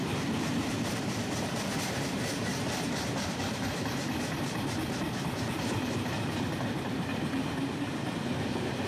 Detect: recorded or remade remade